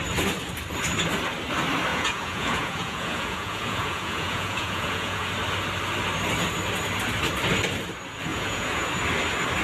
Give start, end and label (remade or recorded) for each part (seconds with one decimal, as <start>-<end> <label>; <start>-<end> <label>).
0.0-1.9 recorded; 1.9-5.3 remade; 5.3-8.3 recorded; 8.3-8.9 remade; 8.9-9.6 recorded